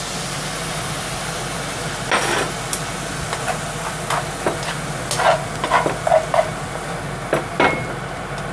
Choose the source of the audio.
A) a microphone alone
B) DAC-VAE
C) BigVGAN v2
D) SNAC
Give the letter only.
A